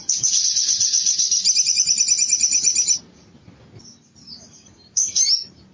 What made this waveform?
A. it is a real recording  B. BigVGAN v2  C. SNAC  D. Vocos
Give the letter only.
B